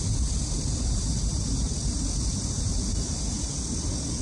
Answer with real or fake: real